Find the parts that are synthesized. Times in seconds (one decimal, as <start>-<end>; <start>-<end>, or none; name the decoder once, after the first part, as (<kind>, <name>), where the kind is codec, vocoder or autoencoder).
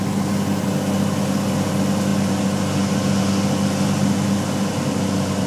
none